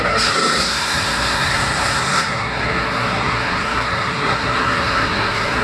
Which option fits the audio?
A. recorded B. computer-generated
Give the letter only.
B